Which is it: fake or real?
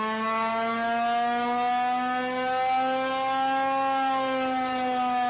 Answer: real